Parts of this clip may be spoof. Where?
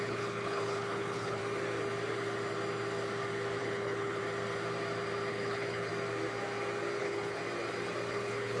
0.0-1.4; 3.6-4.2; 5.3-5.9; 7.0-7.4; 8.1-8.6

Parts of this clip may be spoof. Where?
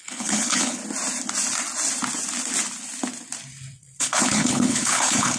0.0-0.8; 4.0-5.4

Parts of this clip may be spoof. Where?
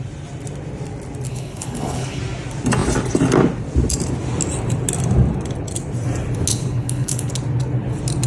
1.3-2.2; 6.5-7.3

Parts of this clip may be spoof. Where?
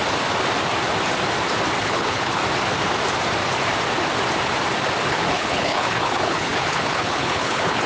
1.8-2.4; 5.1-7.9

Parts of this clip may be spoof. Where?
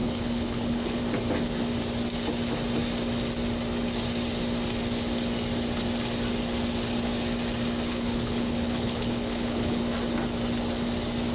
0.0-1.0; 7.9-9.8